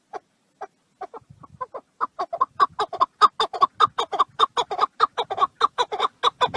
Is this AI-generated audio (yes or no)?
no